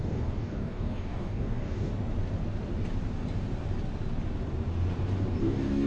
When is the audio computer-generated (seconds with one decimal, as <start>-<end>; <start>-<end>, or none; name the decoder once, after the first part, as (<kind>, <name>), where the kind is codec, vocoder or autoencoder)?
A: 0.0-1.9 (codec, DAC); 5.4-5.9